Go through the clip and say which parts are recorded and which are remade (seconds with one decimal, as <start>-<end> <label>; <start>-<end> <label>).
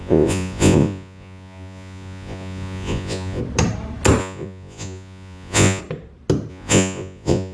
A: 0.0-3.4 remade; 3.4-4.2 recorded; 4.2-5.8 remade; 5.8-6.5 recorded; 6.5-7.5 remade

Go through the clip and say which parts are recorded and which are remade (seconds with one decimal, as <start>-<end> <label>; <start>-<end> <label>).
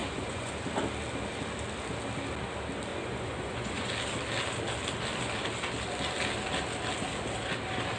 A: 0.0-0.6 remade; 0.6-2.9 recorded; 2.9-3.9 remade; 3.9-8.0 recorded